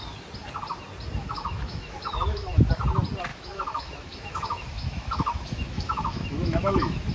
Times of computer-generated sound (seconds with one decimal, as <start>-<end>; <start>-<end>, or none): 1.2-2.6; 3.3-7.1